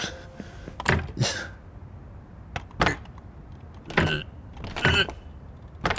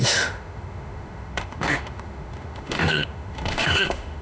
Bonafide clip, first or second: first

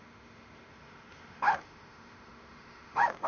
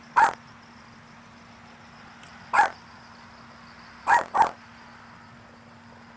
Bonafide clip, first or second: second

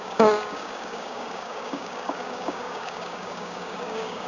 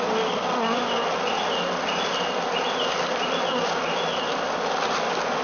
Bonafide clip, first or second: second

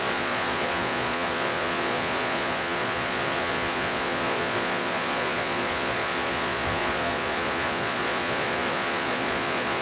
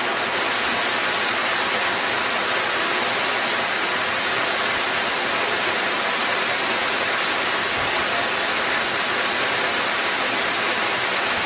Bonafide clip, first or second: second